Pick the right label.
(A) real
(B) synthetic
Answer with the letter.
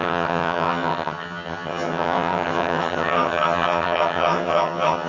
B